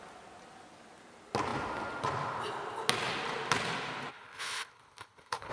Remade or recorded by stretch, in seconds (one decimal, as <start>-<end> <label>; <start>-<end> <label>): 0.0-4.1 recorded; 4.1-5.5 remade